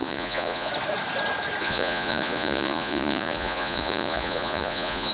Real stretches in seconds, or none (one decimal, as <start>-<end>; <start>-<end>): 0.7-1.6